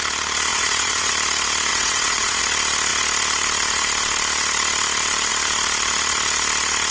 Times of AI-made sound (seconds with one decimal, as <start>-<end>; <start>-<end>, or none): 0.5-1.1; 1.7-2.4